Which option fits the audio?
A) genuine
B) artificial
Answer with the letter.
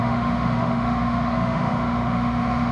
B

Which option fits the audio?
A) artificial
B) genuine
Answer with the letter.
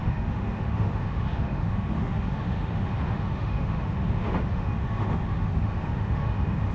A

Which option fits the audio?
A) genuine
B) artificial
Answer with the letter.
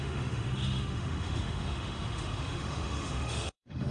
B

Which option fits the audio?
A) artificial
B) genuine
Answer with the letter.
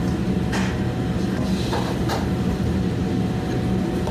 B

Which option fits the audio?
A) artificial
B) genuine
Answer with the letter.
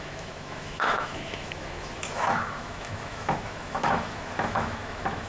A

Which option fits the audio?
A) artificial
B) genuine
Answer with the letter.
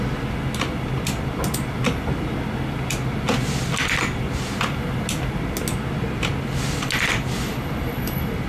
B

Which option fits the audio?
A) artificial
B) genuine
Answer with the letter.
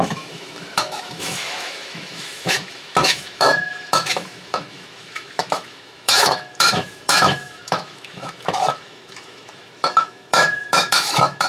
A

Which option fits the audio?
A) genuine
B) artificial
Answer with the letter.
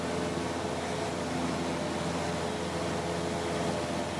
A